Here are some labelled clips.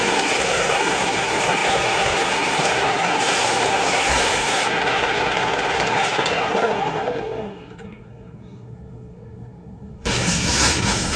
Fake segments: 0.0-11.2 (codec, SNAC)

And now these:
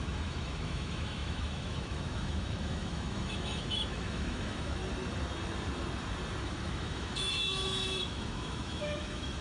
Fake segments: 0.0-4.8 (autoencoder, DAC-VAE); 6.4-9.4

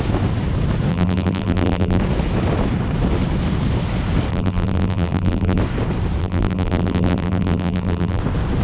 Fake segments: 0.9-2.0 (vocoder, BigVGAN v2); 4.3-5.6; 6.2-8.2

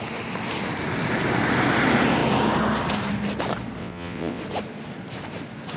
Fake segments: 3.8-4.4 (vocoder, WaveNeXt)

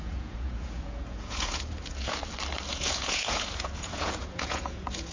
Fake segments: 0.0-2.2 (vocoder, Vocos); 2.7-5.1

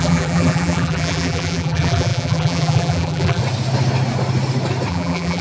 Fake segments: 0.0-3.4 (vocoder, BigVGAN v2); 4.9-5.4